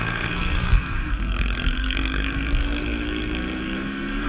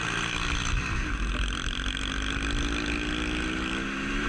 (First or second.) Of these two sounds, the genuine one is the second